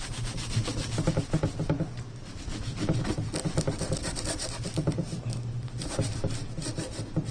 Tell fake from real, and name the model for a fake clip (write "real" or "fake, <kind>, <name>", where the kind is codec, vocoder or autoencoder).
real